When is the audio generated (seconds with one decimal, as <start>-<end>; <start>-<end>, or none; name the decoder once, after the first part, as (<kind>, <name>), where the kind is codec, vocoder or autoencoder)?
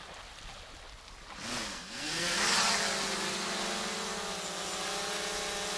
1.7-2.4 (codec, SNAC)